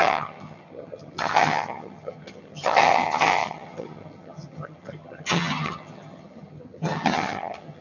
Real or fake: fake